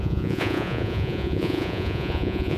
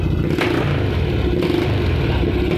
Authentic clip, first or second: second